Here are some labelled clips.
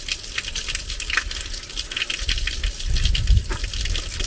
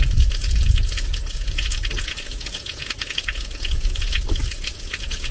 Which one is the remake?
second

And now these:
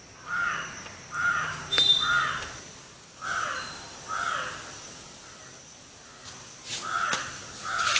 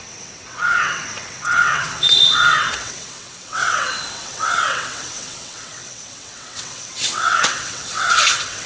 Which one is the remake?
second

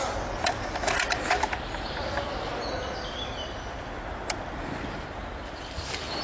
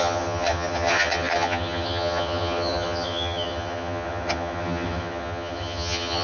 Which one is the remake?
second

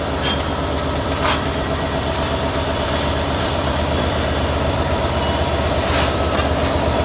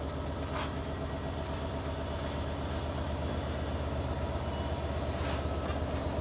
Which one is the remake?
first